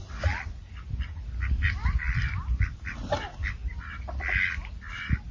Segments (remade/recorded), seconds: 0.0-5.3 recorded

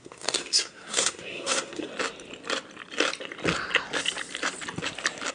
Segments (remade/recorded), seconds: 0.0-1.9 remade; 1.9-5.3 recorded

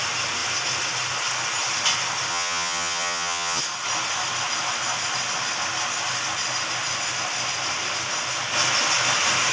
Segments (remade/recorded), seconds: 0.0-2.3 recorded; 2.3-3.6 remade; 3.6-9.5 recorded